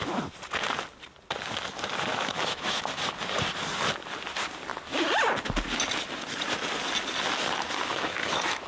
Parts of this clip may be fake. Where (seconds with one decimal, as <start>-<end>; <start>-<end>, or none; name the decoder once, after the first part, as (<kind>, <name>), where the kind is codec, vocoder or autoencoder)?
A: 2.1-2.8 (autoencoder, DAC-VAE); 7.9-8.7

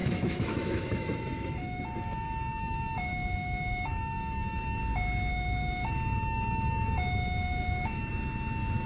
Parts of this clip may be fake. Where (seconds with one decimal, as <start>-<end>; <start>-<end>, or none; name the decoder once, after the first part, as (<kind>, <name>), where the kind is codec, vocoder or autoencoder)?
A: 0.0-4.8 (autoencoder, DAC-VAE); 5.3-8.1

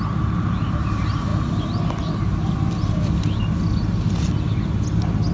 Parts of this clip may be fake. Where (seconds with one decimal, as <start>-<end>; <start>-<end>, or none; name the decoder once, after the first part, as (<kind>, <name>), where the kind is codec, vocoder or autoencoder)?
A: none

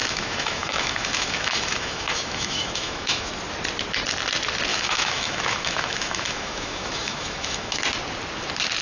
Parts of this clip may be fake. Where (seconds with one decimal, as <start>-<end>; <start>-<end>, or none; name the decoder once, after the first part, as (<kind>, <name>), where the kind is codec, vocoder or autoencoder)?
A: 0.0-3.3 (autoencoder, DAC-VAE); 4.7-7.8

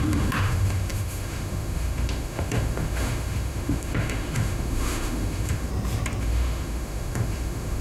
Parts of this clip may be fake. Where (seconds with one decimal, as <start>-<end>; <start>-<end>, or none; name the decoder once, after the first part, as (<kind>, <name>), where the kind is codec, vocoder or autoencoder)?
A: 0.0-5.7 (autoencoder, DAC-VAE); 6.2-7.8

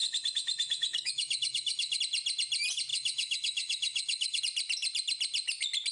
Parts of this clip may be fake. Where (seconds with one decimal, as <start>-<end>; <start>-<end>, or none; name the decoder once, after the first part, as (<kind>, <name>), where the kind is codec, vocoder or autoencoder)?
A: 0.0-2.0 (autoencoder, DAC-VAE); 2.9-4.4